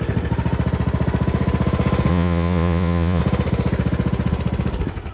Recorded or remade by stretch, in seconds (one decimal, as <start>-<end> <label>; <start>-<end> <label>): 0.0-2.1 recorded; 2.1-3.2 remade; 3.2-5.1 recorded